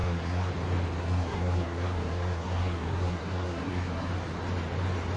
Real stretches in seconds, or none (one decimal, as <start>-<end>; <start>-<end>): 0.5-1.0; 4.1-5.2